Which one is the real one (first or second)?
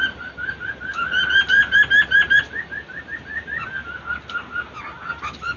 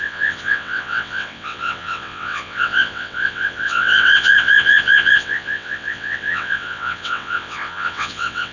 first